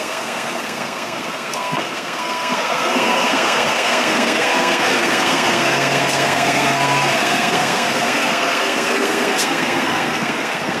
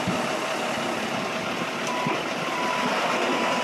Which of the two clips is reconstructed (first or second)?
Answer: first